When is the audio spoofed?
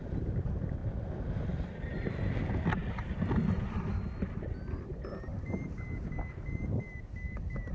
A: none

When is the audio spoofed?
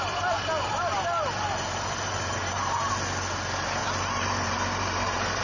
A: 0.7-2.9 (vocoder, BigVGAN v2); 3.8-5.4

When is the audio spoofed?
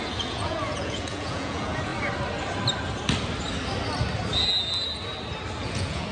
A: 0.0-1.9 (vocoder, Vocos); 5.6-6.1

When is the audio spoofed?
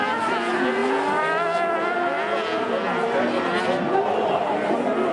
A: none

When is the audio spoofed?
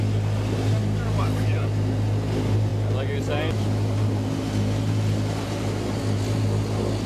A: none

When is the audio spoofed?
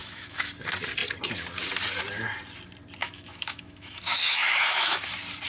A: 0.0-0.5 (autoencoder, DAC-VAE); 3.0-5.1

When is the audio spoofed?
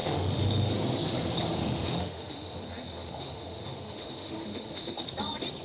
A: 0.0-0.7 (autoencoder, DAC-VAE); 1.6-5.0